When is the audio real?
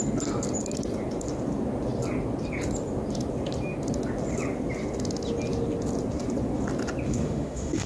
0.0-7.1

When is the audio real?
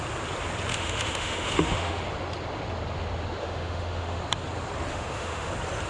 0.0-0.7; 2.0-3.4; 4.2-4.9; 5.5-5.9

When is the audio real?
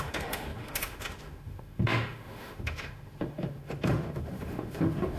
none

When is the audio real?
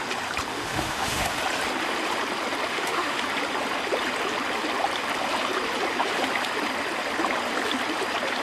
0.0-0.5; 1.4-2.7; 3.2-8.4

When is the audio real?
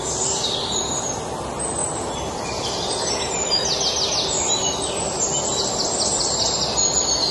0.0-7.3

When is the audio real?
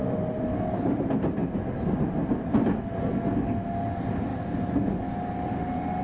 0.0-6.0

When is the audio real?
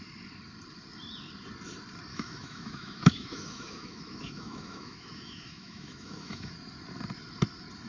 0.0-2.1; 6.5-7.9